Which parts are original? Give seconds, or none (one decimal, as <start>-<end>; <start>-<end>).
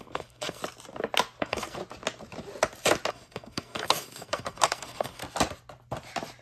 0.6-1.4; 1.8-3.1; 5.2-6.4